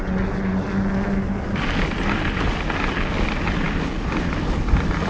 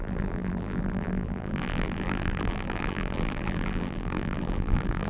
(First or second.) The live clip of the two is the first